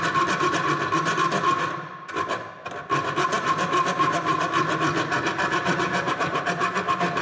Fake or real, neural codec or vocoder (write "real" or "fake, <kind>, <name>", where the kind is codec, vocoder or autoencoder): real